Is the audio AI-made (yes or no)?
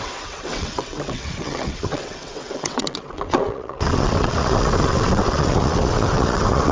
yes